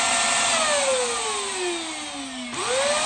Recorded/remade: recorded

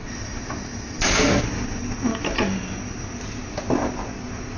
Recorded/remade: recorded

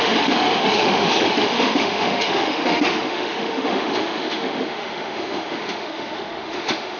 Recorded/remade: remade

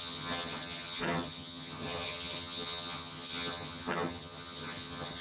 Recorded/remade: remade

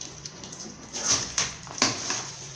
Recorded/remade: remade